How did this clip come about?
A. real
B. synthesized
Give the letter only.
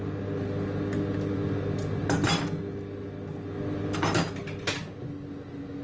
A